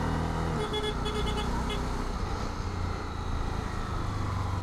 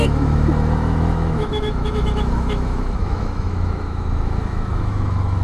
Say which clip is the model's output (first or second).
second